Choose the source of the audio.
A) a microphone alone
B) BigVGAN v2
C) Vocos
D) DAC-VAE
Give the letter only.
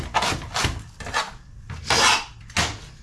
A